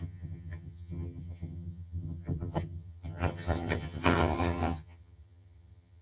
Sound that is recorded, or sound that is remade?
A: remade